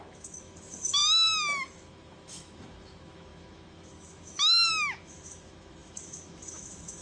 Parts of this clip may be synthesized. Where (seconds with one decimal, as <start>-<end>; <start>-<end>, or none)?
0.0-7.0